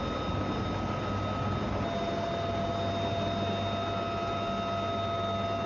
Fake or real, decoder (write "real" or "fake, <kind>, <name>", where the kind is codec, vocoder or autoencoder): real